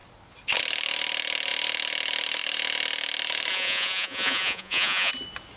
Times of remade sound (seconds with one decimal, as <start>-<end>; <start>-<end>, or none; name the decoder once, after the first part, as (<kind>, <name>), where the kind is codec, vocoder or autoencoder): 3.5-5.1 (vocoder, Vocos)